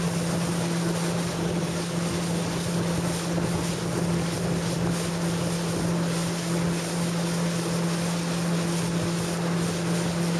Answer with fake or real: real